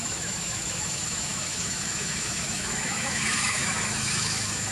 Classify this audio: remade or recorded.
remade